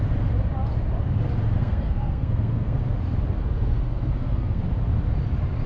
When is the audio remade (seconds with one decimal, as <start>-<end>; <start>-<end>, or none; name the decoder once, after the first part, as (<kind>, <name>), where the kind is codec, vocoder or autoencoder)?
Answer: 1.6-2.8 (codec, SNAC); 3.4-4.6